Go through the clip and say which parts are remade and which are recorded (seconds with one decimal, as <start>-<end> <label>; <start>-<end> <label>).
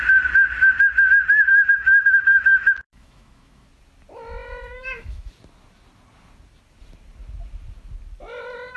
0.0-1.5 recorded; 1.5-3.7 remade; 3.7-4.4 recorded; 4.4-5.3 remade; 5.3-8.8 recorded